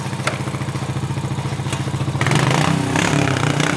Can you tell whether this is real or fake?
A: real